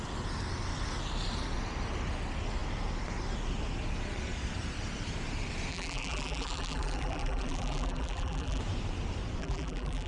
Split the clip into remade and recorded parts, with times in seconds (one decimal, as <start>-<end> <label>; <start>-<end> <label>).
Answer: 0.0-5.7 recorded; 5.7-8.6 remade; 8.6-9.4 recorded; 9.4-10.1 remade